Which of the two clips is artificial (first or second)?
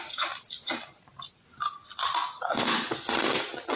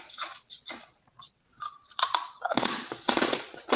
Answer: second